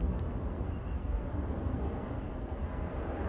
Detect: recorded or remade remade